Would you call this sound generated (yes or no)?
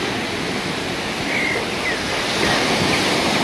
no